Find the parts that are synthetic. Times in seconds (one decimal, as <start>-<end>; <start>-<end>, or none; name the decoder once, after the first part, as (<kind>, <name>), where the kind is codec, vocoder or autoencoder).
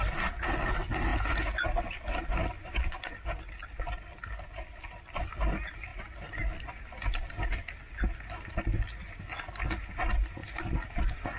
none